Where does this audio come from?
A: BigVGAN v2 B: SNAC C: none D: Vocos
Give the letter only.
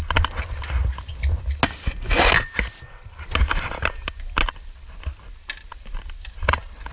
C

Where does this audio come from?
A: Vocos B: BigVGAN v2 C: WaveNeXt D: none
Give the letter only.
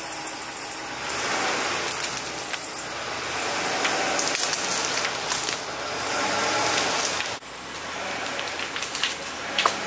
D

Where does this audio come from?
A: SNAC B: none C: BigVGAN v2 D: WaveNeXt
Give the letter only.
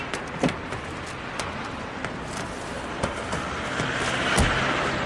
B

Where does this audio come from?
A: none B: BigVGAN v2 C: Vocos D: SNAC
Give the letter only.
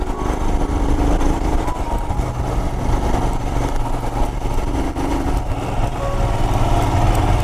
A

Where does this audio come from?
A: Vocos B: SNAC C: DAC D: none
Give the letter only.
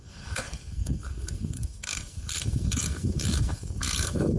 B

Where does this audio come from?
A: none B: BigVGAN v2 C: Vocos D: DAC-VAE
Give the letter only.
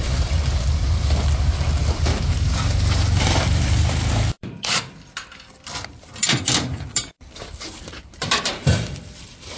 B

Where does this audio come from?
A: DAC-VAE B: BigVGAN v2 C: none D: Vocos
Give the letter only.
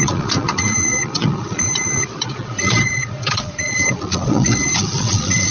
D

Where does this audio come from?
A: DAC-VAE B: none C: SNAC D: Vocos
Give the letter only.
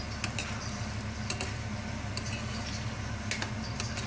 B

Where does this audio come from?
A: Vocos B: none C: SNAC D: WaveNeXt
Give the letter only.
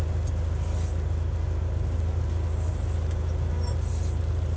B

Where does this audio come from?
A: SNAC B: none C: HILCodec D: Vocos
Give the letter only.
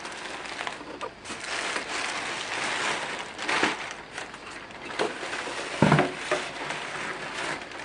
B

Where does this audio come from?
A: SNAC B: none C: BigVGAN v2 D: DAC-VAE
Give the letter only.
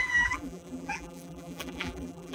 C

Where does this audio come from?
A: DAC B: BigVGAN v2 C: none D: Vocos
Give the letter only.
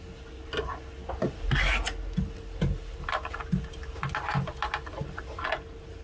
C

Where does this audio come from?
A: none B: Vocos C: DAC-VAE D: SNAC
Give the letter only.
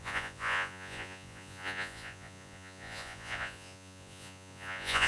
B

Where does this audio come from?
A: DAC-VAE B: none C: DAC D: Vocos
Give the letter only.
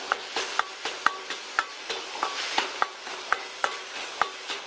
B